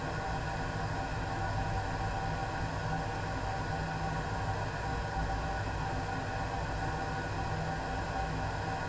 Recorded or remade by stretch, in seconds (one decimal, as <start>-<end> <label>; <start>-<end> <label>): 0.0-8.9 recorded